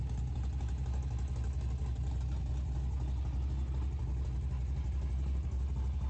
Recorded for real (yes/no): yes